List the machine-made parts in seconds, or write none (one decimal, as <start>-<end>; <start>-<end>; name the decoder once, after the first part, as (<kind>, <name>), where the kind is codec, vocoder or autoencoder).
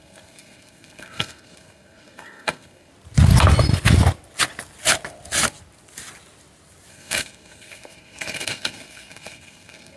0.0-2.9 (codec, SNAC); 6.9-10.0